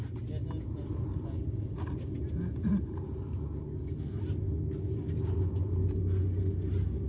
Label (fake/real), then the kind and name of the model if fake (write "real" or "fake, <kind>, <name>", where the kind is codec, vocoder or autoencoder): real